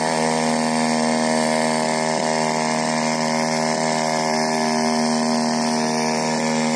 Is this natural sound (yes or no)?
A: yes